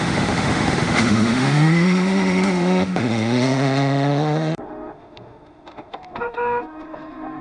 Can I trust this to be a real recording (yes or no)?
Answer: no